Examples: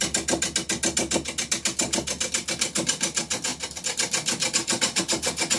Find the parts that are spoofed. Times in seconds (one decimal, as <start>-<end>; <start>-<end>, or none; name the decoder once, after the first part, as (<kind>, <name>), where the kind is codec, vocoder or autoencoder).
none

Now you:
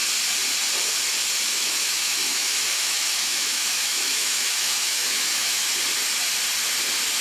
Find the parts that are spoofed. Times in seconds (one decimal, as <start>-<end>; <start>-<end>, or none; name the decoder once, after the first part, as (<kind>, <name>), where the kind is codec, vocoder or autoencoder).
1.5-5.8 (autoencoder, DAC-VAE)

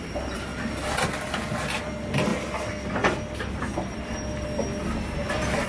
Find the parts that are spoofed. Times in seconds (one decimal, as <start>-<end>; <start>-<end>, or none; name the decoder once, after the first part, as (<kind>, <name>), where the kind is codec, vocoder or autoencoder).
0.0-0.5 (vocoder, BigVGAN v2); 1.2-2.3; 5.2-5.7

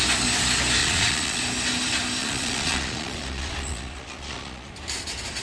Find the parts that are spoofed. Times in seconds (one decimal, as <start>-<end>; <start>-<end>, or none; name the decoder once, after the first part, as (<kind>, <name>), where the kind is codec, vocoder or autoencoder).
0.8-1.4 (vocoder, Vocos); 2.2-4.7